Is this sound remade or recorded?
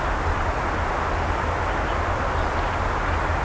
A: recorded